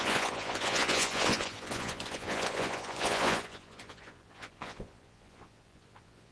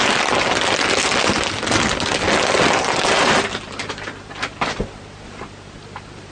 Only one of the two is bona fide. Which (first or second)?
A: second